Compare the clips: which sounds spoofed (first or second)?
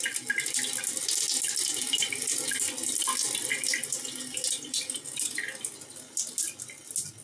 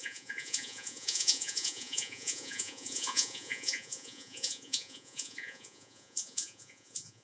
second